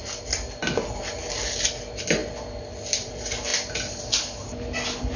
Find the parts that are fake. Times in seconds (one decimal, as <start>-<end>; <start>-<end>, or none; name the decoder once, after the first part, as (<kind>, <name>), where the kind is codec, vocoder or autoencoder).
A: none